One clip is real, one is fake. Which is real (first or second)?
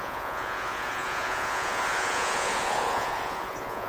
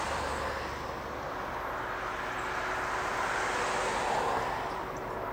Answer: second